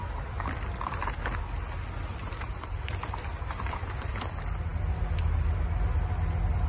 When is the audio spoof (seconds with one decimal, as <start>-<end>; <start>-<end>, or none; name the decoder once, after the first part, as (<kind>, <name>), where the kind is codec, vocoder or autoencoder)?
2.1-4.1 (vocoder, BigVGAN v2)